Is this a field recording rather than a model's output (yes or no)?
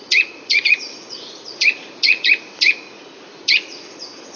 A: no